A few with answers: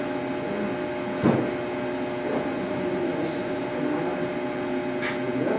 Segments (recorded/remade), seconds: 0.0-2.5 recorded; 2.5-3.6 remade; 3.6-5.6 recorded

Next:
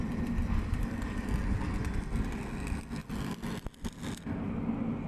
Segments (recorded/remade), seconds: 0.0-5.1 recorded